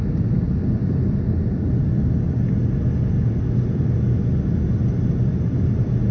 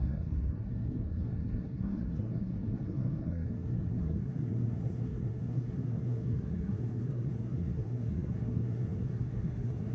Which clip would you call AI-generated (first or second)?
second